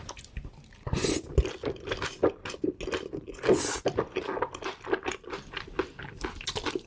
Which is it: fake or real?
real